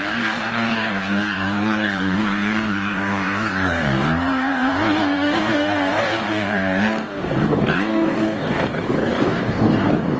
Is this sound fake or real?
fake